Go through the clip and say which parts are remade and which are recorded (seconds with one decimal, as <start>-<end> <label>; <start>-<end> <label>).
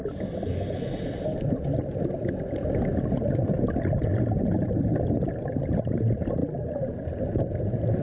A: 0.0-8.0 recorded